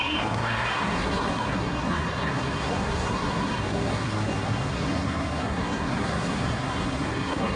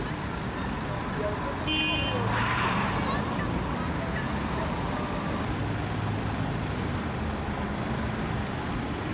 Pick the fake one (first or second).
first